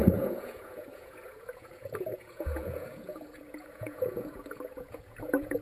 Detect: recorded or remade remade